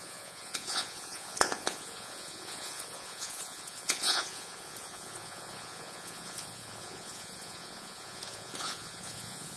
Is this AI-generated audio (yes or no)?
yes